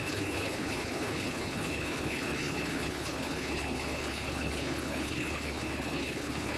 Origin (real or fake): fake